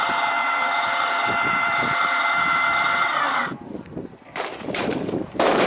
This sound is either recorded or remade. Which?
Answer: remade